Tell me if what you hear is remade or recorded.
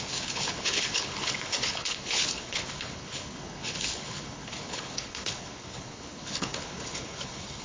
remade